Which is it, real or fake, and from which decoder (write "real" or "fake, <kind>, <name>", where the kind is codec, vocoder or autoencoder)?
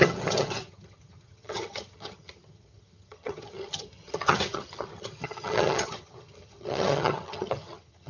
fake, vocoder, HiFi-GAN